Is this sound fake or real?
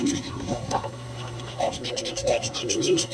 fake